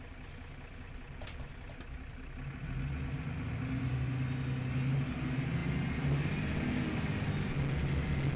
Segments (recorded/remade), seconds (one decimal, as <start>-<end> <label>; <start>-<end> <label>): 0.0-8.4 recorded